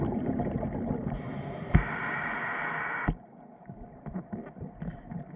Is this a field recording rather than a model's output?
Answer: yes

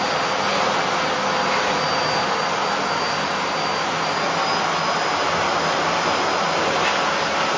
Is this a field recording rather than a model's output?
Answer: yes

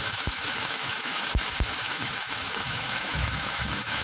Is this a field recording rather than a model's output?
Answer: no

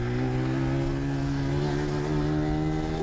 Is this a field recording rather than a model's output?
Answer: yes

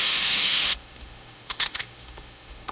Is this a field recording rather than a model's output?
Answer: no